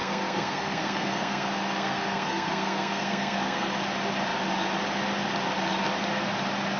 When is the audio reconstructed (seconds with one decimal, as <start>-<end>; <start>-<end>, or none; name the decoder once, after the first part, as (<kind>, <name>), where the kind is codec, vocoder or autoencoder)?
0.0-3.7 (codec, SNAC)